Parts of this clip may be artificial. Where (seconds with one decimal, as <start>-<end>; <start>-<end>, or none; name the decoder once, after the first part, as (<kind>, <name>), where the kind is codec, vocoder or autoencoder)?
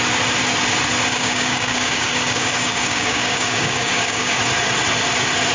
1.1-4.4 (codec, DAC)